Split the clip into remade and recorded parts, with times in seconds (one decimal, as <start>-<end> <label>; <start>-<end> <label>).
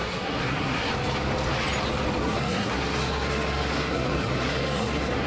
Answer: 0.0-0.9 remade; 0.9-2.2 recorded; 2.2-5.3 remade